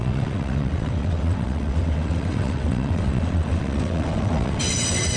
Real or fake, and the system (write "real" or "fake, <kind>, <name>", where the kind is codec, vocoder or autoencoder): fake, vocoder, WaveNeXt